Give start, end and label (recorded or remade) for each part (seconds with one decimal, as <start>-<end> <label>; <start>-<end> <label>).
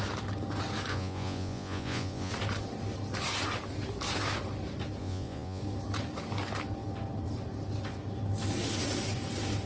0.0-0.9 recorded; 0.9-2.3 remade; 2.3-5.0 recorded; 5.0-5.6 remade; 5.6-9.7 recorded